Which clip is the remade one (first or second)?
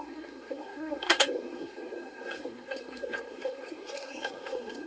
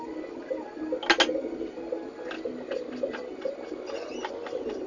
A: first